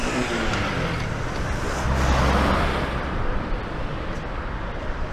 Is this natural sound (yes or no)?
no